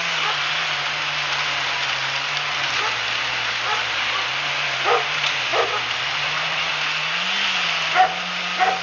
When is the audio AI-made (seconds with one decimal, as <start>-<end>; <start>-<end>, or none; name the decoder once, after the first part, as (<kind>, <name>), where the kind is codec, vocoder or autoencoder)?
5.5-6.0 (vocoder, BigVGAN v2)